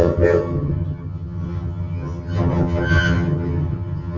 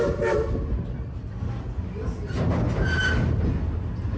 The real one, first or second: second